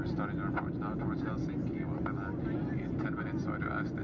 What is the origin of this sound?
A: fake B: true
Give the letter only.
B